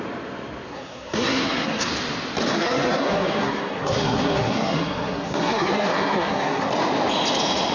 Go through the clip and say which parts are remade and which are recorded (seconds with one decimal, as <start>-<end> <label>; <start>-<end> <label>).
0.0-0.7 recorded; 0.7-1.9 remade; 1.9-2.5 recorded; 2.5-6.7 remade; 6.7-7.7 recorded